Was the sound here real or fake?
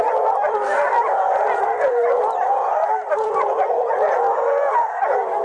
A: real